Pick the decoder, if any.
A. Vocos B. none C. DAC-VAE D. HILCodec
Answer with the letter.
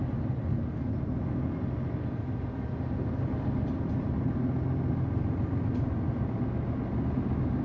B